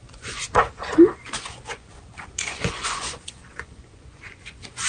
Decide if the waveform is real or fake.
fake